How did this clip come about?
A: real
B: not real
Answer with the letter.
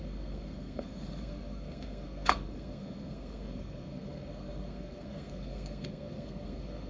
B